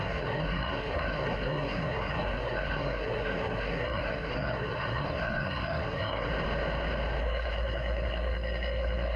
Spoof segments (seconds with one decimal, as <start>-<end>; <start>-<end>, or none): 0.0-6.3; 7.2-9.2